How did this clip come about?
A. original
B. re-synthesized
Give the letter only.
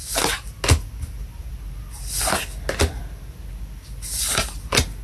A